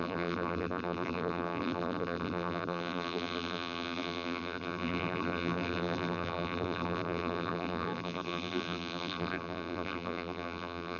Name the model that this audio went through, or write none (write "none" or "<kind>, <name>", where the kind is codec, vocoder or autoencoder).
vocoder, BigVGAN v2